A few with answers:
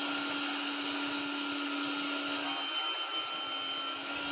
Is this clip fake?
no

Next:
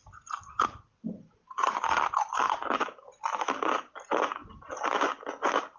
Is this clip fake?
no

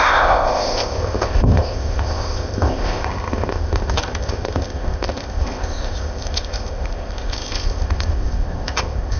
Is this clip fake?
yes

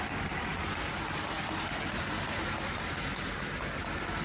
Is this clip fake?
no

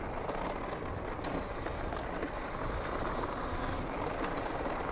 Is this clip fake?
no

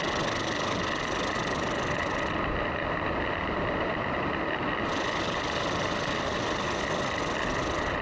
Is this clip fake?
no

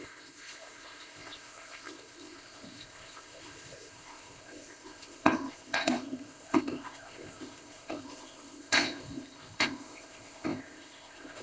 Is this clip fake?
yes